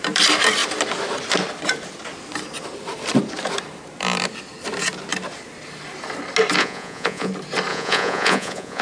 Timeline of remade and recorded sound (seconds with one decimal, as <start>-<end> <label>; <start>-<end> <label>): 0.0-6.6 recorded; 6.6-7.3 remade; 7.3-7.7 recorded; 7.7-8.8 remade